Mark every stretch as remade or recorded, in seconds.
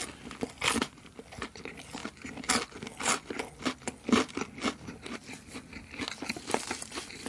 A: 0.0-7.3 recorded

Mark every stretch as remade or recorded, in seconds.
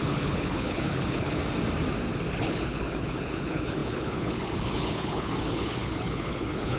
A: 0.0-1.4 remade; 1.4-2.3 recorded; 2.3-6.8 remade